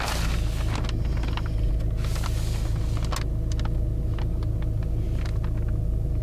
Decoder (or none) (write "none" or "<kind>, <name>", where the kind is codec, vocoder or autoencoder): none